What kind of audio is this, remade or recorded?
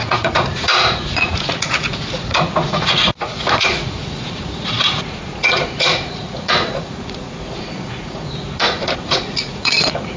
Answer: remade